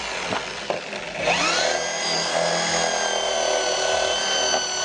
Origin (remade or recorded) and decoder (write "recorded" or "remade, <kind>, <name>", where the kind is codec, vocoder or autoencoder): recorded